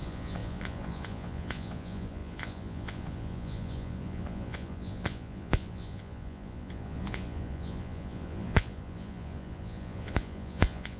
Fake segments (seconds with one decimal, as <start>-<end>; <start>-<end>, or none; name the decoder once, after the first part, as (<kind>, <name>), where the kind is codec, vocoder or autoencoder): 0.0-11.0 (vocoder, Vocos)